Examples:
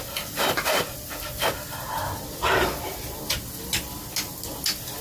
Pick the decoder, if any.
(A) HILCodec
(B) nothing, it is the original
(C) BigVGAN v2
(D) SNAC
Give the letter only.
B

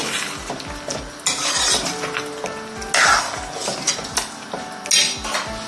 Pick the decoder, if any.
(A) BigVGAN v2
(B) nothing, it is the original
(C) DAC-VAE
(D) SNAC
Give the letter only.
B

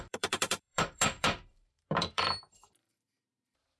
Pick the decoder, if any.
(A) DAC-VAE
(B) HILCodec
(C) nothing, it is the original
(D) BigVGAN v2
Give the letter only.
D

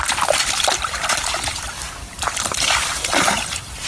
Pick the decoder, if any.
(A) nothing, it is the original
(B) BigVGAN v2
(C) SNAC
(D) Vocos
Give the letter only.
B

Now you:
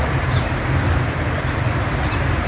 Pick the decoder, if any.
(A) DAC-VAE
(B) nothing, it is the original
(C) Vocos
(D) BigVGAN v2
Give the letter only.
D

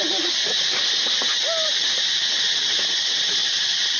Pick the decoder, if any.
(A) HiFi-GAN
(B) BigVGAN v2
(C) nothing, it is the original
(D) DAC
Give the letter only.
C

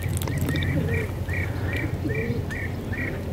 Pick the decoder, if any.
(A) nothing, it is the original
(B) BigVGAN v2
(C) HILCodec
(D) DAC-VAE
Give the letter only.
A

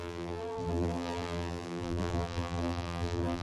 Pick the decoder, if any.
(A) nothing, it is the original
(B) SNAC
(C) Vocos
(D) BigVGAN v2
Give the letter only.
D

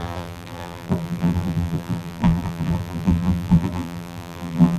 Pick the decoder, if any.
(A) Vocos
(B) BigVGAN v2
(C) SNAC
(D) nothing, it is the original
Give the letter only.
B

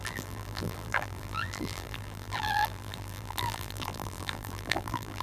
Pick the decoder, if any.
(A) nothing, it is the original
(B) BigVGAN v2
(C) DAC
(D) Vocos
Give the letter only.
B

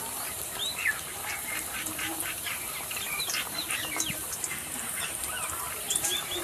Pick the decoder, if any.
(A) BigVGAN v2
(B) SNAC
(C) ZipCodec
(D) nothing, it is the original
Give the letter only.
A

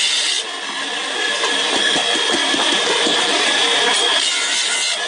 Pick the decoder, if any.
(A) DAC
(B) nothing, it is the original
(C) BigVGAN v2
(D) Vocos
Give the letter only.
B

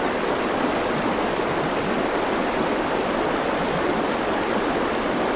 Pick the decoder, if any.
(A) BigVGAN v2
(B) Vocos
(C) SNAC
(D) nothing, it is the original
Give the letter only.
D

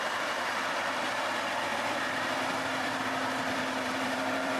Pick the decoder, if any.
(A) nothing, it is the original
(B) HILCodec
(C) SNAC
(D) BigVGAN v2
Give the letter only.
D